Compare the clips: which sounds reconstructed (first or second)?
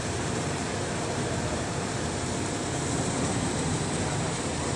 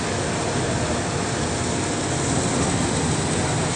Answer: first